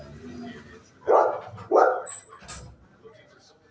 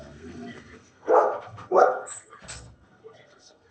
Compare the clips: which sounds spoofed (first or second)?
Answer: second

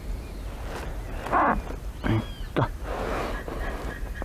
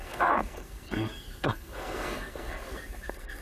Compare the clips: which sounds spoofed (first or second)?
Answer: second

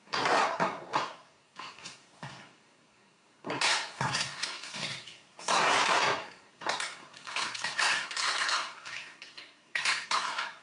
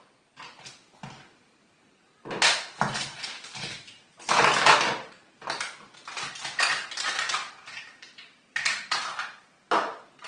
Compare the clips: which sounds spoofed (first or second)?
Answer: first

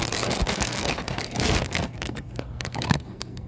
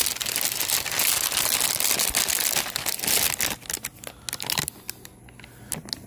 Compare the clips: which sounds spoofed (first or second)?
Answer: first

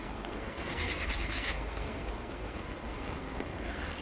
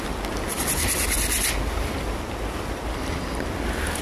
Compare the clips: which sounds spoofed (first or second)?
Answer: first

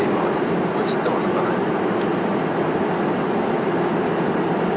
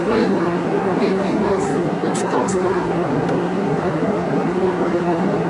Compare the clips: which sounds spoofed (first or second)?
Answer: second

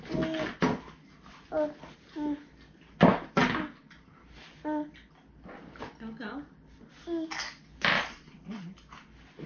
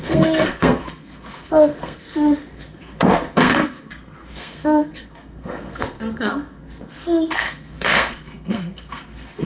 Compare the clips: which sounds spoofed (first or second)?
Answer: second